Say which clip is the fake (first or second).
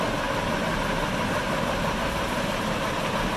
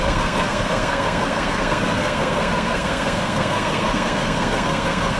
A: second